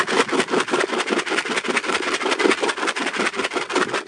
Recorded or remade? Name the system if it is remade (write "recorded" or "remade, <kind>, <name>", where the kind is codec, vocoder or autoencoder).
recorded